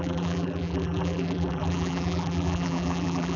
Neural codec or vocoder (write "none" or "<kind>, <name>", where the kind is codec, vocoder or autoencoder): vocoder, BigVGAN v2